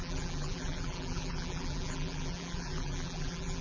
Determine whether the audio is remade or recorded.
remade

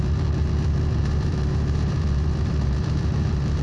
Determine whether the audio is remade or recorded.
remade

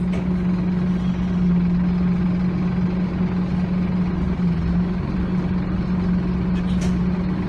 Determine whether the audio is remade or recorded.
recorded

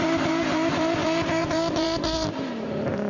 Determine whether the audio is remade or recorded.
remade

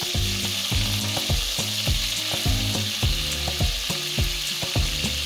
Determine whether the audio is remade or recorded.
recorded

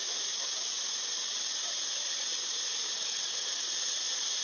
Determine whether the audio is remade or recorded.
remade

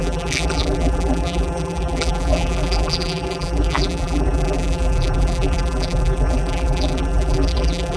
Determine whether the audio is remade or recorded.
remade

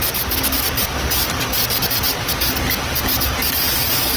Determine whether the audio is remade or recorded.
recorded